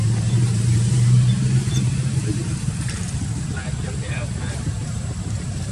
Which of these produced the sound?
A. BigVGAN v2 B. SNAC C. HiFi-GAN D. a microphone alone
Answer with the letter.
A